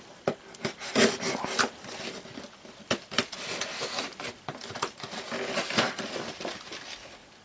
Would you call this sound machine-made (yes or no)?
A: no